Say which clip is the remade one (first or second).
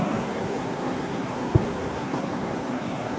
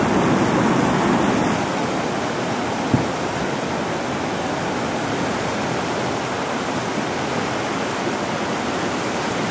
first